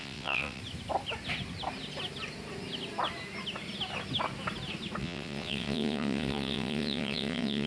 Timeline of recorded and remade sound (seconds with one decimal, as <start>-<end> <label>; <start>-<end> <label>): 0.0-0.6 remade; 0.6-5.0 recorded; 5.0-7.7 remade